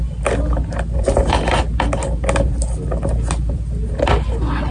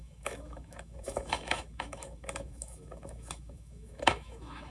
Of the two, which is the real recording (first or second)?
first